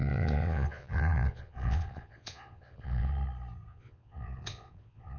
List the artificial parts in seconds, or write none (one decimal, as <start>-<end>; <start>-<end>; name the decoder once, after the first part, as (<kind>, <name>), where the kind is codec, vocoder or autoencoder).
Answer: 0.0-3.1 (vocoder, Vocos); 3.7-5.2